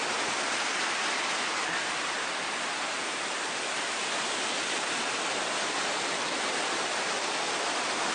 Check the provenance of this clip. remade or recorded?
recorded